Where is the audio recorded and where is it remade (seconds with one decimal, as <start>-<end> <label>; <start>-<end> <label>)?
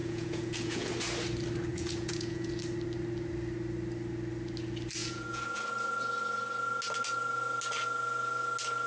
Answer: 0.0-0.9 remade; 0.9-1.7 recorded; 1.7-2.5 remade; 2.5-5.0 recorded; 5.0-5.6 remade; 5.6-8.9 recorded